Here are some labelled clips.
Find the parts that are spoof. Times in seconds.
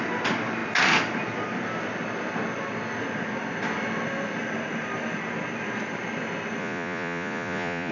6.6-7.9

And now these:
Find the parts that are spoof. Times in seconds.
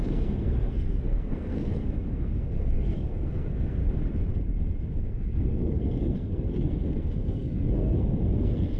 0.0-3.8; 5.0-8.8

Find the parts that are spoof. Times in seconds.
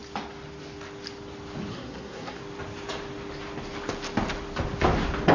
1.7-2.4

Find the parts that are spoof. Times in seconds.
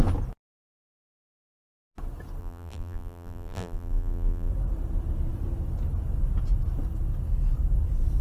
2.4-4.5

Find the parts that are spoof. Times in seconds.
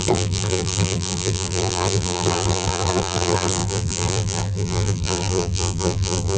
0.0-6.4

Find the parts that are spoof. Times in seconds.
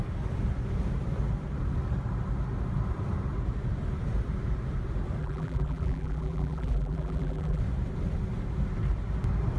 5.2-7.6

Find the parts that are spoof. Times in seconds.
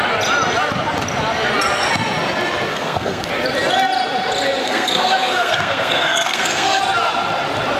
2.7-3.3; 4.6-6.8